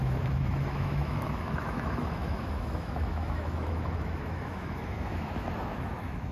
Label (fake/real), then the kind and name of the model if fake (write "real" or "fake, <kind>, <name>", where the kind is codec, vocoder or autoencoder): fake, autoencoder, DAC-VAE